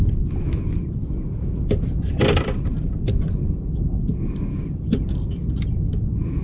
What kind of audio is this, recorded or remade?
recorded